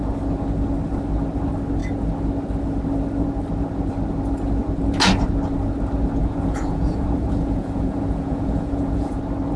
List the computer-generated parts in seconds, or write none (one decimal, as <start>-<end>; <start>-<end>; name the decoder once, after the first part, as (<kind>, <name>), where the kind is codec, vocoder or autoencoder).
6.2-9.2 (vocoder, Vocos)